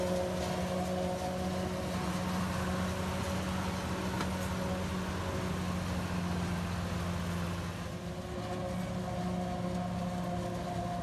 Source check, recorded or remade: recorded